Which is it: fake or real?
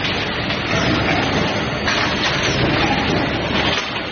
real